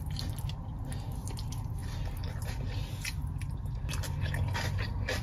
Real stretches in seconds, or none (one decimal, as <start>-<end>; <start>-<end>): 0.0-5.2